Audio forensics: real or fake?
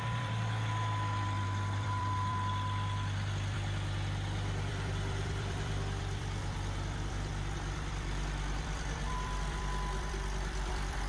fake